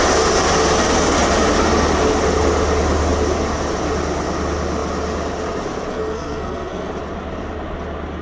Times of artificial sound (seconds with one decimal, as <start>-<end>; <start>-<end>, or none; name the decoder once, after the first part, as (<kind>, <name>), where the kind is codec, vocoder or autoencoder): 5.9-6.9 (codec, SNAC)